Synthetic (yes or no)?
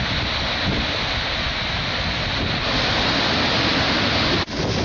no